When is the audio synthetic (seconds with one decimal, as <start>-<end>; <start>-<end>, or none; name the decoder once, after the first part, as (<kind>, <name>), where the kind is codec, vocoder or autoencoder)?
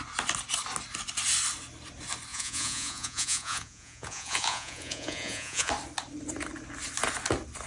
2.3-5.7 (vocoder, Vocos)